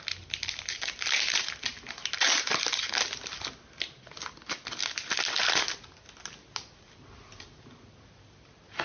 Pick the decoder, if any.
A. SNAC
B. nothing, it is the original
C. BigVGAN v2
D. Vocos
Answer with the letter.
B